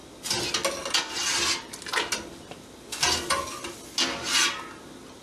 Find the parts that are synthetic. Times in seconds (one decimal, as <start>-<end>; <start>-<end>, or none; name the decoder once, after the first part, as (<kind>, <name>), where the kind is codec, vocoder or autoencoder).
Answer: none